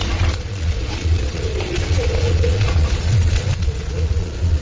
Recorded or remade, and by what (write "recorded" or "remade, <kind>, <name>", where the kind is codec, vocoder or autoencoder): remade, vocoder, Vocos